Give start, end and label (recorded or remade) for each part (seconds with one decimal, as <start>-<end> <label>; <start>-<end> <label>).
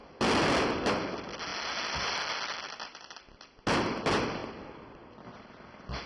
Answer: 0.0-6.1 recorded